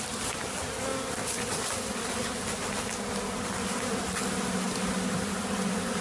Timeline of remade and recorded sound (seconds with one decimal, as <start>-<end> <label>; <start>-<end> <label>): 0.0-6.0 recorded